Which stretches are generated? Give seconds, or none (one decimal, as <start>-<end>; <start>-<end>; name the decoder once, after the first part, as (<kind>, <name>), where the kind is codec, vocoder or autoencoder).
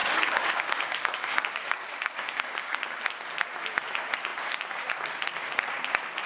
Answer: 0.0-2.8 (codec, DAC)